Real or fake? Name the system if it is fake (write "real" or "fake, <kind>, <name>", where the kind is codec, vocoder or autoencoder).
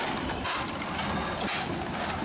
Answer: real